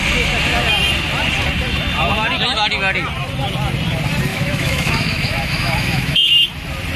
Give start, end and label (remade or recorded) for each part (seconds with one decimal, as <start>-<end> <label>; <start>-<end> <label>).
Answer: 0.0-4.3 recorded; 4.3-6.3 remade; 6.3-7.0 recorded